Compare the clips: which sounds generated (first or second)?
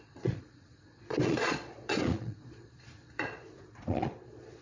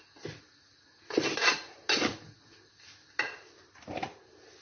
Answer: first